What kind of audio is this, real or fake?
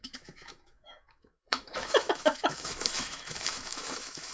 fake